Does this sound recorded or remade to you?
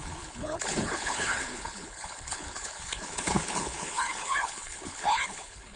remade